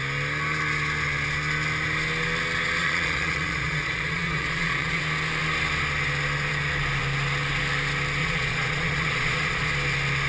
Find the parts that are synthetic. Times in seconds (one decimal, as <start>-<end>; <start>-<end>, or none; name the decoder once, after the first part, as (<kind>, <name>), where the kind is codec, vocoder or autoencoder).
2.8-5.0 (vocoder, Vocos); 8.2-9.7